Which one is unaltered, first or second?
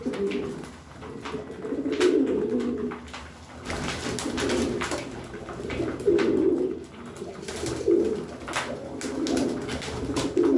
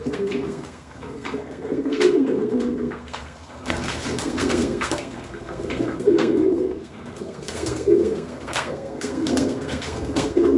first